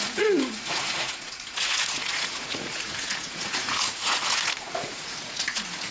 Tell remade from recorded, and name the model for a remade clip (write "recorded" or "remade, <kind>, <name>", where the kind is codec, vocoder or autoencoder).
remade, vocoder, Vocos